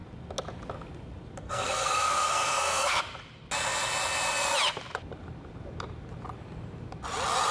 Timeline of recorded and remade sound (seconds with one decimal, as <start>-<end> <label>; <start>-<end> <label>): 0.0-1.4 recorded; 1.4-3.0 remade; 3.0-7.5 recorded